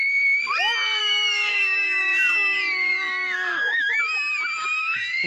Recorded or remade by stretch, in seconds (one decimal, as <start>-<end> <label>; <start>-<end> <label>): 0.0-1.0 recorded; 1.0-4.0 remade; 4.0-4.8 recorded; 4.8-5.3 remade